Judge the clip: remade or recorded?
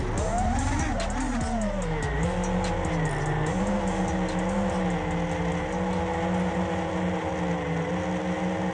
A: recorded